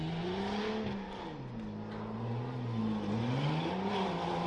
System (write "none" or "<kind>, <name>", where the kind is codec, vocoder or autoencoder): none